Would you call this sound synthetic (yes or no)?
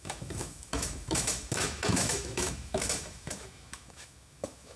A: yes